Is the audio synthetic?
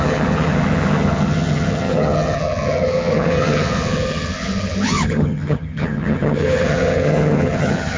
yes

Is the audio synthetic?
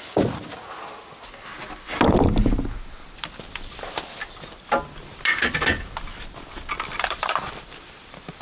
no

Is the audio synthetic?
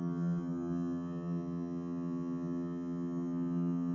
yes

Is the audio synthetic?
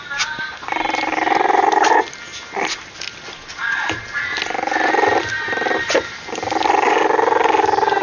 no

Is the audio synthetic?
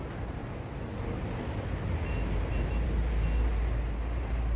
no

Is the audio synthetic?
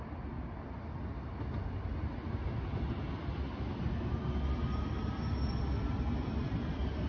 no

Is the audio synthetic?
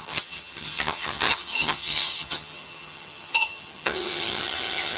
yes